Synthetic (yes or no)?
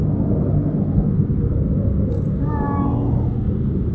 no